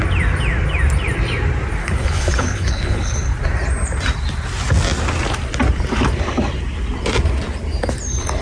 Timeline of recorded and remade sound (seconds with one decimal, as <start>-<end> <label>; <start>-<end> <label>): 0.0-1.8 recorded; 1.8-3.3 remade; 3.3-8.4 recorded